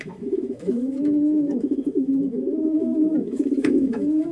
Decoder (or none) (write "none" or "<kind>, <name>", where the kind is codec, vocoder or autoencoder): autoencoder, DAC-VAE